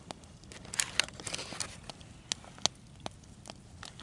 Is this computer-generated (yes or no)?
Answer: no